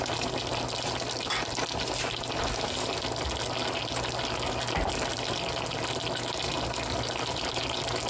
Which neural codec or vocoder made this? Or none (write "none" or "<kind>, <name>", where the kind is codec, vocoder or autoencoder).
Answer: none